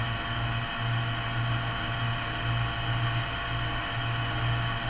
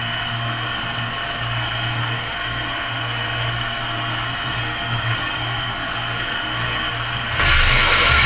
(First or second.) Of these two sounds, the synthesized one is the second